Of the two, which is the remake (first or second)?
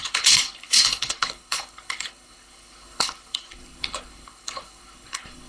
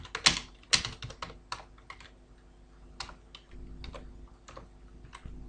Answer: first